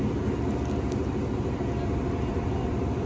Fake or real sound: real